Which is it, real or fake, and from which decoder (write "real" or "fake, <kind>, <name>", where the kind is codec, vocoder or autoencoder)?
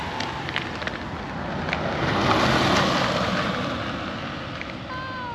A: real